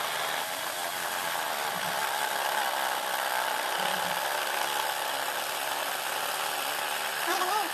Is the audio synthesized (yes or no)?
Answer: yes